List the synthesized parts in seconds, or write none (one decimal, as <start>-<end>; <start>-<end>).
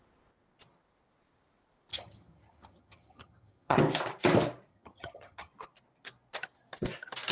1.9-3.8; 4.7-5.5